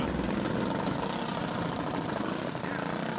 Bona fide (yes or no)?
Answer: yes